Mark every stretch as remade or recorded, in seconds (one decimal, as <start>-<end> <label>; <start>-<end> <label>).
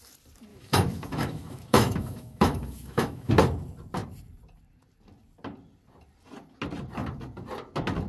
0.0-0.5 recorded; 0.5-3.3 remade; 3.3-8.1 recorded